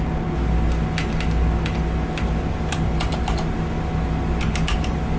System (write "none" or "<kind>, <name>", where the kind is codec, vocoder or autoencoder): none